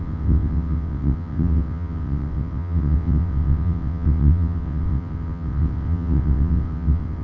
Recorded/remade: remade